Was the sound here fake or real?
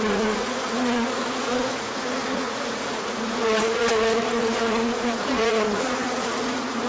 fake